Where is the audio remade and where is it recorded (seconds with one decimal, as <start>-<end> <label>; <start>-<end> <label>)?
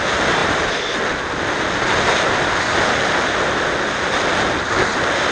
0.0-5.3 recorded